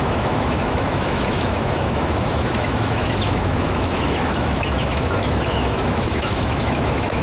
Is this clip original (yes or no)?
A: no